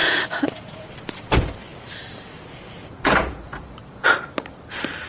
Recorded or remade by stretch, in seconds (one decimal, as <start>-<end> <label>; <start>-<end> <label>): 0.0-0.9 remade; 0.9-2.8 recorded; 2.8-3.6 remade; 3.6-5.1 recorded